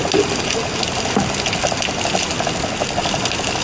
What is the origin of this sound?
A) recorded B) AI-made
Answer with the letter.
A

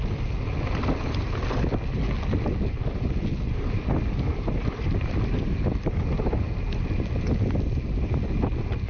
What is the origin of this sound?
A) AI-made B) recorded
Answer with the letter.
B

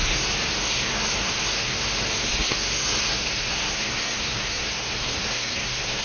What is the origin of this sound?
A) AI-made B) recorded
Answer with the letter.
A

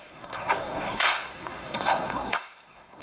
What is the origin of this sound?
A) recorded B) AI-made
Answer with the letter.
B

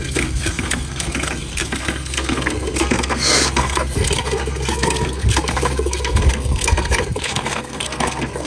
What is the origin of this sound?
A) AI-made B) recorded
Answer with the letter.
A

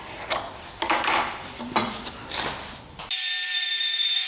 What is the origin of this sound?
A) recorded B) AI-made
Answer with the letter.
A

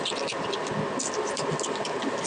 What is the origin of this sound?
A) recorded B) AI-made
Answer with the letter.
A